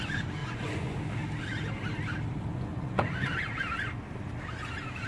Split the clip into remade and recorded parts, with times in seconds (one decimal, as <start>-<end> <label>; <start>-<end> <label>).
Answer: 0.0-0.4 recorded; 0.4-1.0 remade; 1.0-2.5 recorded; 2.5-3.3 remade; 3.3-5.1 recorded